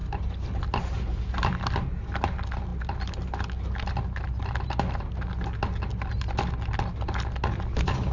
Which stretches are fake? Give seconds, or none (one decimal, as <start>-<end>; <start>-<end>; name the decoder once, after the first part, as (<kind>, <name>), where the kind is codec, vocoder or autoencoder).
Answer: none

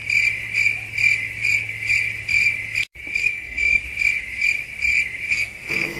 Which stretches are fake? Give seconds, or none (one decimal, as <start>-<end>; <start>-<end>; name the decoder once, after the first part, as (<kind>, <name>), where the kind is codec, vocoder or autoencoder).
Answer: 3.2-3.8 (codec, SNAC); 5.3-6.0

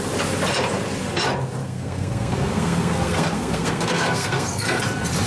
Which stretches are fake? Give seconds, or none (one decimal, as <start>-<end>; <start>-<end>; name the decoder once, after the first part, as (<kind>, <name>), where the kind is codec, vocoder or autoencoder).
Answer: 1.6-4.8 (codec, SNAC)

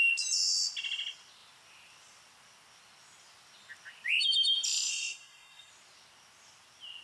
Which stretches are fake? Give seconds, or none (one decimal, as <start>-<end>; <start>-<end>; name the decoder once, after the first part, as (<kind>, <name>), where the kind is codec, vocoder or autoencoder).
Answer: 4.9-5.7 (codec, SNAC)

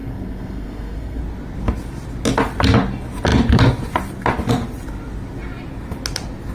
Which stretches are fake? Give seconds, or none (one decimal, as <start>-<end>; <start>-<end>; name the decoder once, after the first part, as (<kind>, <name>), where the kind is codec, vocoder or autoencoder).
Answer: 0.0-1.2 (codec, SNAC)

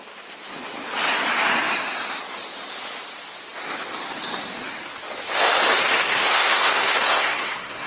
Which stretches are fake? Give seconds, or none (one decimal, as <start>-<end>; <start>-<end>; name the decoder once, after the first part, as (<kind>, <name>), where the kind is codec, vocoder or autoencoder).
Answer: 6.1-7.9 (codec, SNAC)